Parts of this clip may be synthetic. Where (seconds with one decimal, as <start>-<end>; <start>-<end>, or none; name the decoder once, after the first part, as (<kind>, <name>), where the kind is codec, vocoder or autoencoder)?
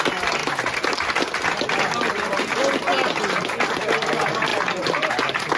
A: none